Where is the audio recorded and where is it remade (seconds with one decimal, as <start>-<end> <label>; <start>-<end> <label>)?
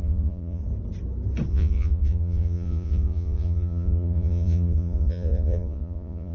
0.0-0.6 remade; 0.6-1.5 recorded; 1.5-6.3 remade